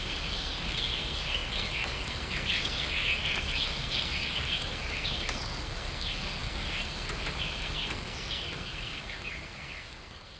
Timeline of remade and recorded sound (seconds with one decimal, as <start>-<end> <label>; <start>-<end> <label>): 0.0-10.4 remade